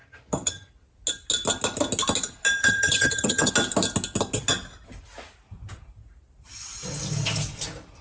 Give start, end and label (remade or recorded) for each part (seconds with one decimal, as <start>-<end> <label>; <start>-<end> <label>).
0.0-0.7 remade; 0.7-2.6 recorded; 2.6-3.5 remade; 3.5-8.0 recorded